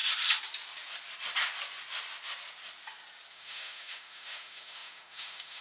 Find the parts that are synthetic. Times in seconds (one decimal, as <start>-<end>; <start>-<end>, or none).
3.3-5.6